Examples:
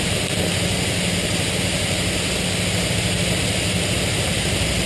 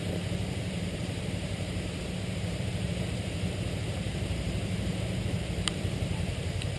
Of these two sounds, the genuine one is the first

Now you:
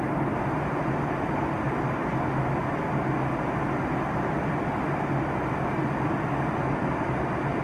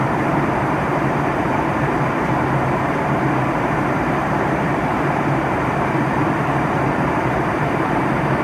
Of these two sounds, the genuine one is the first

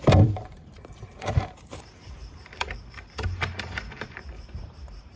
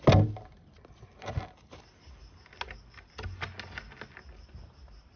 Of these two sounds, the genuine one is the second